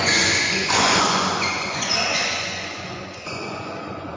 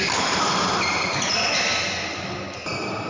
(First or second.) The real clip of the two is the second